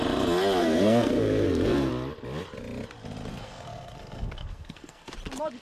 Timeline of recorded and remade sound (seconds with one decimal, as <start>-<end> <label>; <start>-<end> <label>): 0.0-0.6 recorded; 0.6-1.9 remade; 1.9-3.3 recorded; 3.3-5.1 remade; 5.1-5.6 recorded